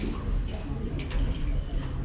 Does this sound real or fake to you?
real